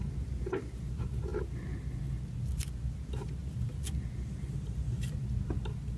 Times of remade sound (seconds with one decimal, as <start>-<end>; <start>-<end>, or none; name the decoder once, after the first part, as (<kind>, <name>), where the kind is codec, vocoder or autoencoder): none